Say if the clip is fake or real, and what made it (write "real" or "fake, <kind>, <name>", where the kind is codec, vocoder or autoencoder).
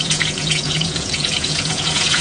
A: fake, vocoder, Vocos